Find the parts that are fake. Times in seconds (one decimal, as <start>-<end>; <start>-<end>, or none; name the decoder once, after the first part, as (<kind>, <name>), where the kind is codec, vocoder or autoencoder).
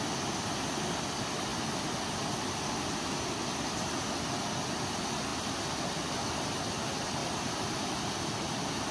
7.2-8.1 (vocoder, BigVGAN v2)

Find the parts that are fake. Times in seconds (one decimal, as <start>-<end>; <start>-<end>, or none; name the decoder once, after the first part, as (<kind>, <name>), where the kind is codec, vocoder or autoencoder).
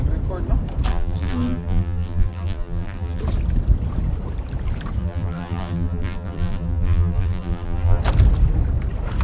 0.9-3.2 (vocoder, BigVGAN v2); 5.0-8.0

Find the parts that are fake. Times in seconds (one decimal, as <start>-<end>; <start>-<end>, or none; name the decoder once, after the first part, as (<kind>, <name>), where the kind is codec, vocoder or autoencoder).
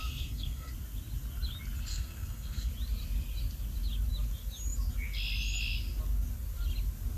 0.0-0.7 (codec, SNAC); 1.9-2.7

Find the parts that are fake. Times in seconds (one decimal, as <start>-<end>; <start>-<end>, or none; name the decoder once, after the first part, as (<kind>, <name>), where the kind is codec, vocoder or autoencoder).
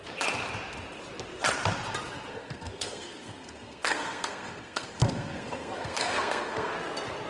2.3-6.7 (codec, SNAC)